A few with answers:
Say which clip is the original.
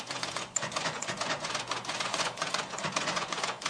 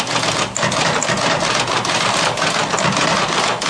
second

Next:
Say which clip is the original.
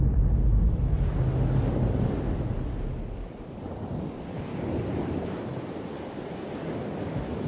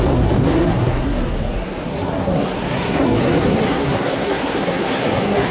first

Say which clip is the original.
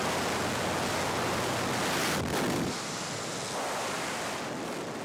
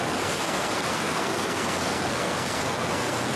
first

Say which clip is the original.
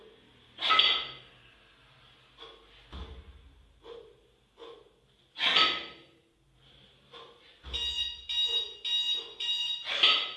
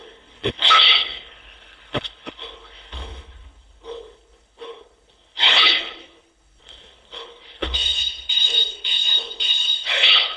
first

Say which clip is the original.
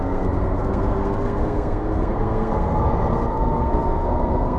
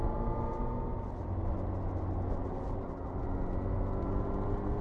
second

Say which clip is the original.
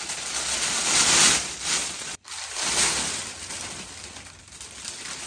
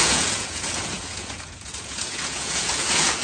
first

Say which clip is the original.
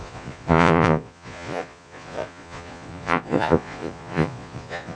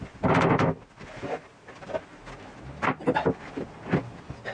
second